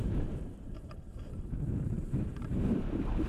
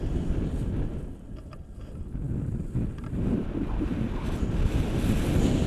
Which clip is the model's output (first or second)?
first